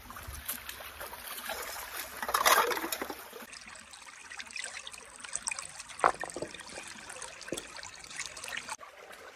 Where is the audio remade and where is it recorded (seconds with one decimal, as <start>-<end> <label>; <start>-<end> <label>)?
0.0-9.4 recorded